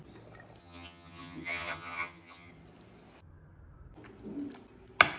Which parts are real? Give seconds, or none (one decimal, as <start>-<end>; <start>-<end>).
0.0-0.6; 2.5-5.2